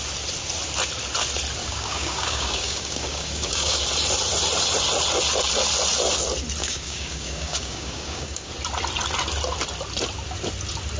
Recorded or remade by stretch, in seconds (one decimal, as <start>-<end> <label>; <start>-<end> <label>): 0.0-1.6 recorded; 1.6-3.8 remade; 3.8-6.6 recorded; 6.6-8.5 remade; 8.5-11.0 recorded